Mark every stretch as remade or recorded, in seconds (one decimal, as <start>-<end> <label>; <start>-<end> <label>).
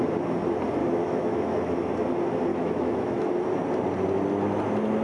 0.0-0.8 recorded; 0.8-1.9 remade; 1.9-2.5 recorded; 2.5-3.3 remade; 3.3-5.0 recorded